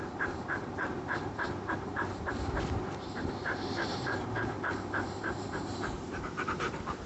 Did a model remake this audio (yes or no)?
yes